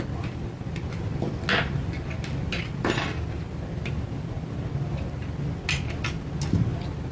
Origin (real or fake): real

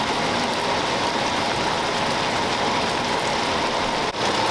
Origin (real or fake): real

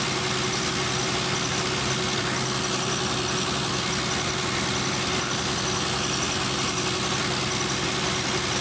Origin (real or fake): real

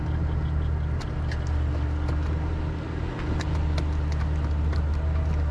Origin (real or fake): real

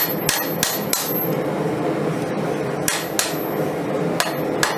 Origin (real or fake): real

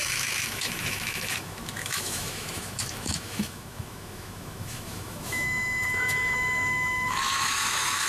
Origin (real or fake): fake